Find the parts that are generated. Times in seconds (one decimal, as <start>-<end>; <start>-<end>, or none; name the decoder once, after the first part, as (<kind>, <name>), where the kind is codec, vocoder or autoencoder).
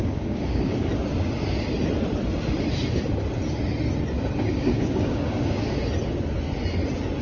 0.0-0.9 (codec, DAC); 4.4-5.8